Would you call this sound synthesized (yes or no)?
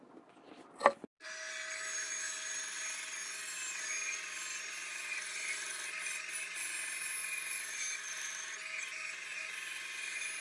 no